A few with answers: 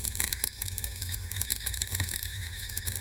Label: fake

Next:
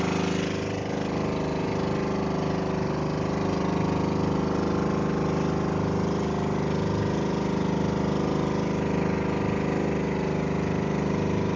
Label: real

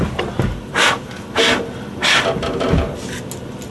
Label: real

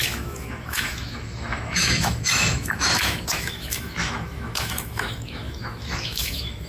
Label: fake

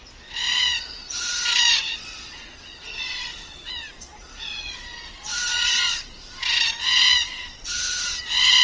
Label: fake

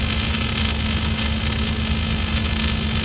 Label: real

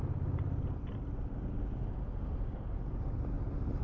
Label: real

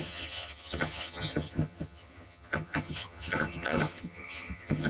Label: fake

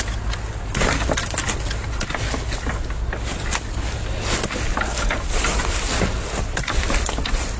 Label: real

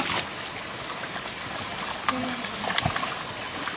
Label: real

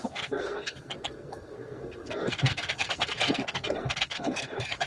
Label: fake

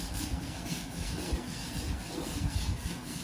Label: fake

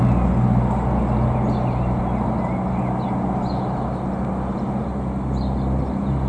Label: real